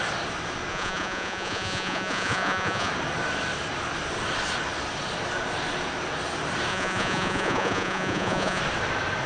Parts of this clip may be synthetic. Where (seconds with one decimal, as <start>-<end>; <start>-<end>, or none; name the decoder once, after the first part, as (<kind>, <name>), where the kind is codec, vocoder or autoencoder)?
0.7-2.9 (vocoder, Vocos); 6.7-8.6